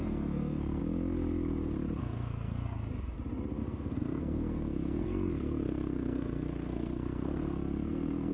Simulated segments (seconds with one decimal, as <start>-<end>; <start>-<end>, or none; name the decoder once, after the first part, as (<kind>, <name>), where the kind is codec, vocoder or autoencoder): 0.0-0.8 (codec, SNAC); 2.0-2.7; 3.6-8.3